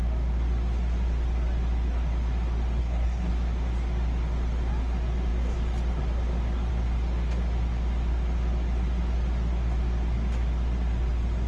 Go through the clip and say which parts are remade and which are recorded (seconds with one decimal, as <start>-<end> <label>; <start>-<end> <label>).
0.0-2.8 recorded; 2.8-3.3 remade; 3.3-11.5 recorded